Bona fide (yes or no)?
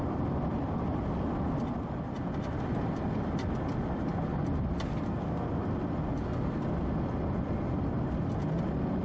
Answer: yes